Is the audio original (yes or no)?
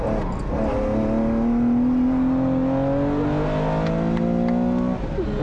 yes